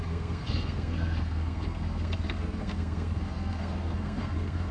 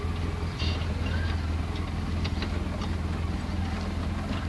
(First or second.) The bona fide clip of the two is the second